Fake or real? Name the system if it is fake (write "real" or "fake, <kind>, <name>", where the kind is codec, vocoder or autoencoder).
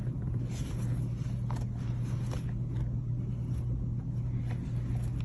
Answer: real